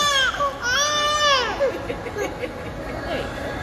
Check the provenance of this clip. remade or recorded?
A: recorded